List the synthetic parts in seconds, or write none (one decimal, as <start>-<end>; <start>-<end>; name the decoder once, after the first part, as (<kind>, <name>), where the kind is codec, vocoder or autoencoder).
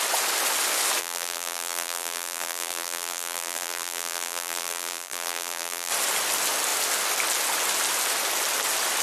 1.0-5.9 (vocoder, BigVGAN v2)